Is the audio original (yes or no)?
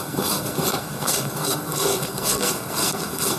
no